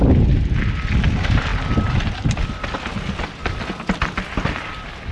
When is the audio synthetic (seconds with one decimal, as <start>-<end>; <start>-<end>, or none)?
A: none